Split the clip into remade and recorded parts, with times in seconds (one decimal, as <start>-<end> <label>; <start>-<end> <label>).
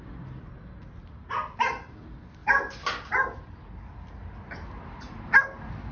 0.0-5.9 recorded